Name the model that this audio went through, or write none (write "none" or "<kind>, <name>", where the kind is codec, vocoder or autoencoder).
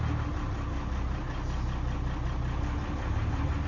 none